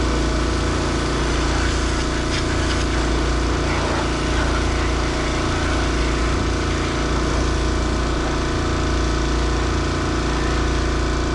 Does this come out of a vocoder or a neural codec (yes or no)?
no